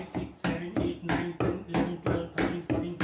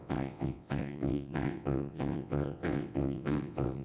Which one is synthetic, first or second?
second